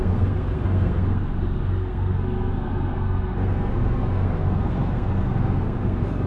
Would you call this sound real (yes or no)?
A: no